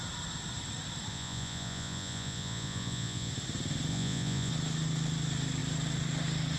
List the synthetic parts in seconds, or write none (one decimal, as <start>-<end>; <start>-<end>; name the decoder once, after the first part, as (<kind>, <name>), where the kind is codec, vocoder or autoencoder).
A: 1.1-3.3 (vocoder, Vocos); 3.9-4.5